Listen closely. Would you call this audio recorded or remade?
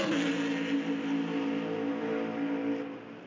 recorded